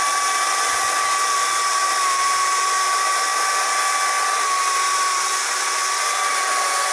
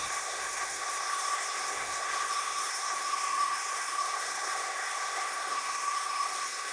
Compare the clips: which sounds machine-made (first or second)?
second